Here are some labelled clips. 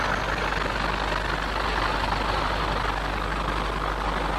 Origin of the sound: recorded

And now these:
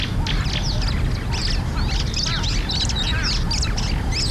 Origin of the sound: recorded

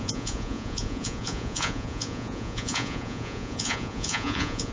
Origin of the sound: remade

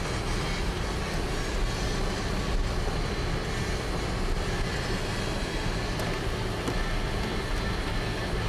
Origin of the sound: recorded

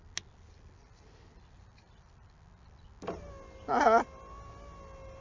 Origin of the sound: recorded